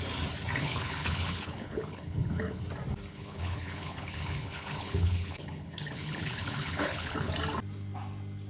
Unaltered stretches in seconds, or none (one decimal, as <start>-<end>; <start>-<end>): 0.0-0.6; 2.6-3.1; 7.3-8.5

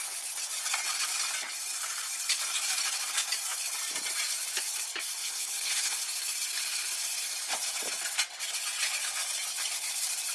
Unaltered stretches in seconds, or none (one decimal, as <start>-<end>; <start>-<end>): 0.0-5.2; 6.0-10.3